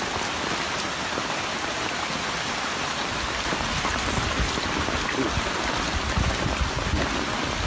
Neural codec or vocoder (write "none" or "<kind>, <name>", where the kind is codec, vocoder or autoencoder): none